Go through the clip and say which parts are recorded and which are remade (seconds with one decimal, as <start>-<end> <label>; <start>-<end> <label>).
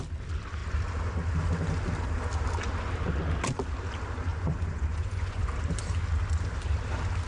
0.0-4.3 recorded; 4.3-5.5 remade; 5.5-7.3 recorded